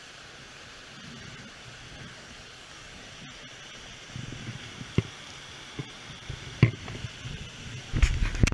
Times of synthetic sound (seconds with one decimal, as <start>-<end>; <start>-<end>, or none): 2.1-3.0